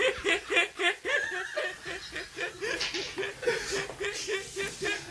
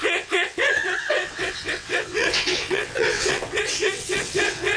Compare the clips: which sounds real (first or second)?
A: first